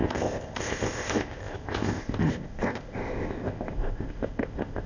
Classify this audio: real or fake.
fake